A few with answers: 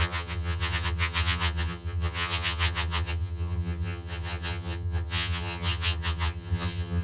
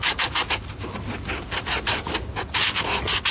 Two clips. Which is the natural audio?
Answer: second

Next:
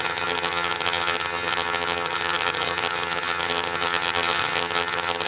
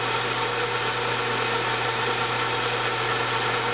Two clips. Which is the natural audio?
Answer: second